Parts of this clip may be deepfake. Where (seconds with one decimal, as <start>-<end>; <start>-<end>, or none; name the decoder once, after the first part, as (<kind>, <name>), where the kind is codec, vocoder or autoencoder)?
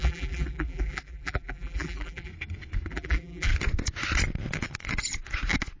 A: 0.0-2.3 (vocoder, BigVGAN v2); 2.9-3.5